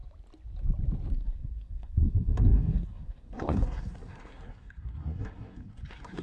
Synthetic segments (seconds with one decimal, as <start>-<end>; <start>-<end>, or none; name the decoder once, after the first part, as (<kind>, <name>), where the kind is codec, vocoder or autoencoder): 1.1-6.2 (codec, SNAC)